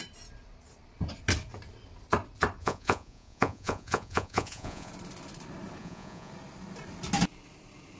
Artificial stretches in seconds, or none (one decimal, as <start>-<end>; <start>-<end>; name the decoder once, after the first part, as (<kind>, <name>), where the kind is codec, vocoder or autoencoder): 2.6-4.9 (vocoder, Vocos); 5.8-6.3